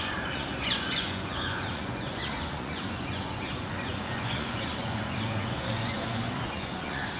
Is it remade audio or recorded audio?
remade